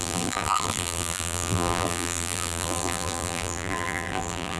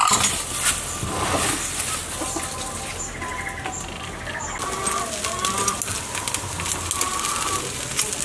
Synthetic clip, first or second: first